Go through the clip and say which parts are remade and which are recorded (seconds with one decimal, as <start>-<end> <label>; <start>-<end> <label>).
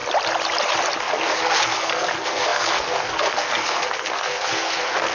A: 0.0-1.0 recorded; 1.0-5.1 remade